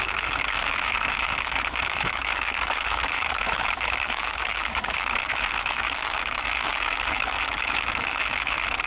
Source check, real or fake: fake